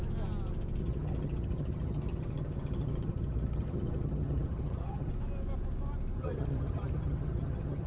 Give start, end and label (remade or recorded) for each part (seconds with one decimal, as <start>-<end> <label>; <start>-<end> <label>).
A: 0.0-0.8 recorded; 0.8-5.1 remade; 5.1-6.2 recorded; 6.2-7.9 remade